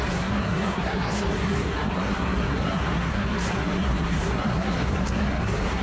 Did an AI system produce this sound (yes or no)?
yes